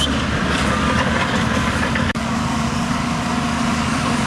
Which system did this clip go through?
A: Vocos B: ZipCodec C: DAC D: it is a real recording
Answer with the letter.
C